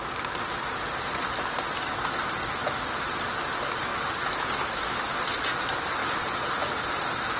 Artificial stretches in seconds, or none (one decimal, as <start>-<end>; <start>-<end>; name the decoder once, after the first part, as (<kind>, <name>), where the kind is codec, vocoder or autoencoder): 3.9-5.1 (autoencoder, DAC-VAE)